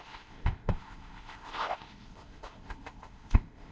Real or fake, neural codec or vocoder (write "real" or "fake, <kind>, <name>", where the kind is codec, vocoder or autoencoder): fake, codec, ZipCodec